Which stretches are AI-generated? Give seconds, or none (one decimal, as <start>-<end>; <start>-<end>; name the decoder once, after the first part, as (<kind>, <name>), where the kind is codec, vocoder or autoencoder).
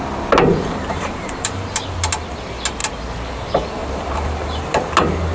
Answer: 0.5-1.6 (vocoder, BigVGAN v2); 3.8-4.6